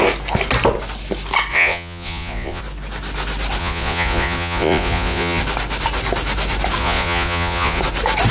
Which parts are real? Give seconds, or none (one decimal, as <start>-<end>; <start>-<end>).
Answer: 0.0-1.5; 2.6-3.6; 5.4-6.8; 7.8-8.3